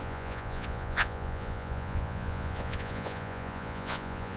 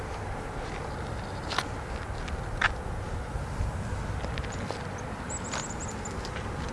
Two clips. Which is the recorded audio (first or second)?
second